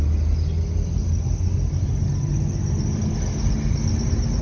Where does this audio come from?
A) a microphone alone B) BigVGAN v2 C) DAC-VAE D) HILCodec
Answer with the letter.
A